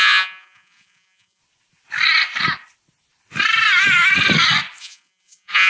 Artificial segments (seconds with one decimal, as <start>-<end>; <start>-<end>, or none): 0.0-1.4; 4.8-5.7

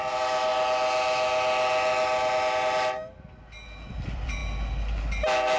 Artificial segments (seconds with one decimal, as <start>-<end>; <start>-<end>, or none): 0.0-0.5; 3.9-4.4